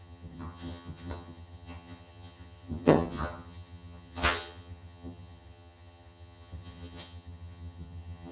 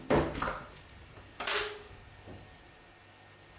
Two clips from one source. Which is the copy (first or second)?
first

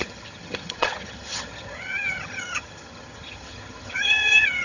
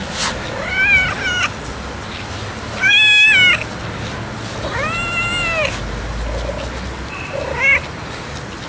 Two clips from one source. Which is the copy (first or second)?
first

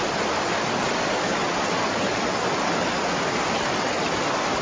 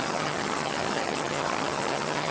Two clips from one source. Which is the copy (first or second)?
second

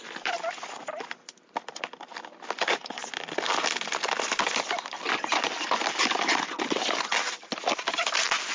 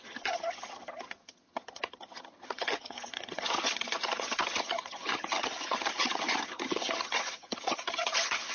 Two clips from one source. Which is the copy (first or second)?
second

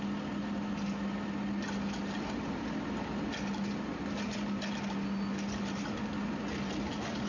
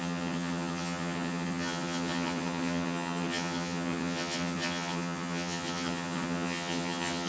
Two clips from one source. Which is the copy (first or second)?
second